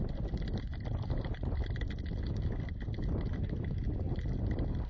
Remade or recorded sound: recorded